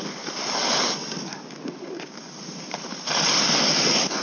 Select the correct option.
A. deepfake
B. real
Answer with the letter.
B